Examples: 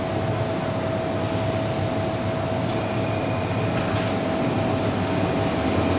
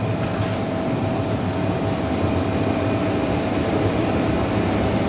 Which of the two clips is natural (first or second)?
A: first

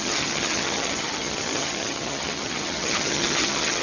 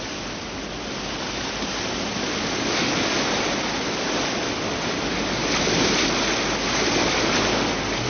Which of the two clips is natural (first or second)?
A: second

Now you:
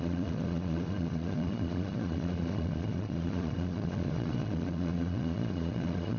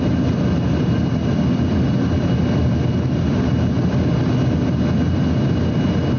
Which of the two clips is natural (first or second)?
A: second